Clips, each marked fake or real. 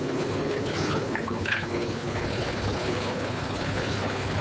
fake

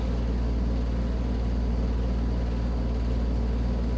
real